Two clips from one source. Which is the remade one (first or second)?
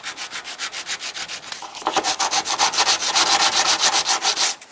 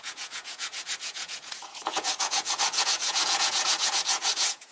second